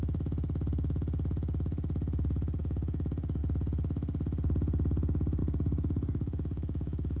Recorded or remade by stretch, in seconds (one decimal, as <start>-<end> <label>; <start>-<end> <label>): 0.0-2.6 recorded; 2.6-3.4 remade; 3.4-5.4 recorded; 5.4-7.2 remade